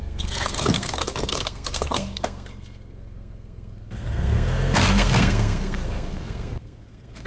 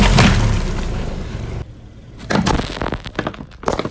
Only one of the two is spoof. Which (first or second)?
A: first